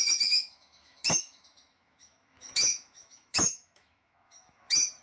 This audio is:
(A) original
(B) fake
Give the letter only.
B